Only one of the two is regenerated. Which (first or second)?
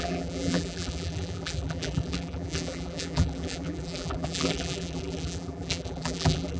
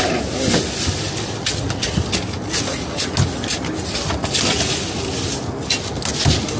first